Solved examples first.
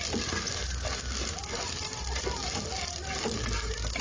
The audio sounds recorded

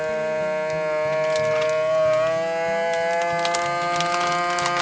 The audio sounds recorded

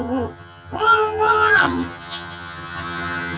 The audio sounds remade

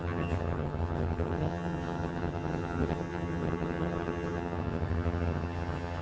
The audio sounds remade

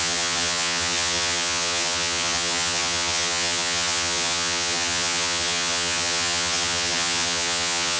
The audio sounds remade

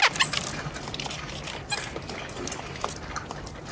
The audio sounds recorded